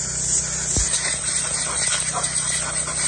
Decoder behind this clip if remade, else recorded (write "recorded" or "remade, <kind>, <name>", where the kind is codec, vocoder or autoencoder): recorded